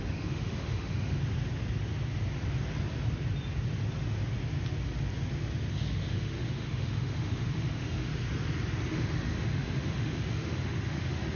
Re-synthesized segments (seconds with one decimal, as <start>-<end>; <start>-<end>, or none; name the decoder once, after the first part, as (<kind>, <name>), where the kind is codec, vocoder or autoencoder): 0.0-1.2 (autoencoder, DAC-VAE); 5.7-8.1; 8.9-11.4